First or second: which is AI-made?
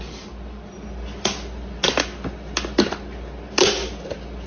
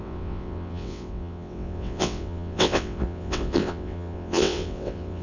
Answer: second